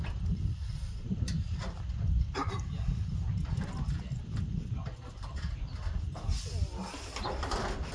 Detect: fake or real real